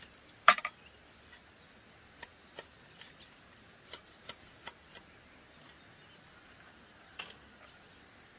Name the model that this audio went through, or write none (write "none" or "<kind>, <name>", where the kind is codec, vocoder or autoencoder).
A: none